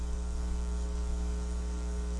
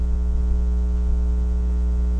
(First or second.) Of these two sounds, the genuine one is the second